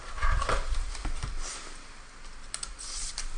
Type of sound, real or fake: real